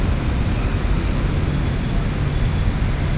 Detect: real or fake real